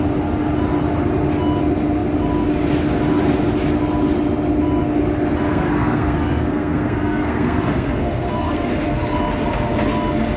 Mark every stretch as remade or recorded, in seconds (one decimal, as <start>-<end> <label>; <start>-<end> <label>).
0.0-5.5 recorded; 5.5-8.7 remade; 8.7-10.4 recorded